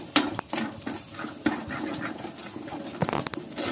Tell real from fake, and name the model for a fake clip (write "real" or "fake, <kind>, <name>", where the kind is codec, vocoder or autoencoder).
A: real